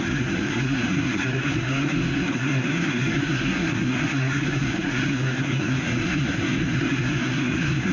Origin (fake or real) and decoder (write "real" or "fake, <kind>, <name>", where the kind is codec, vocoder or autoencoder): fake, codec, SNAC